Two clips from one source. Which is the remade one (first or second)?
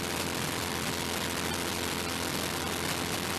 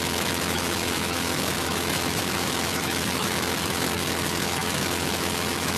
second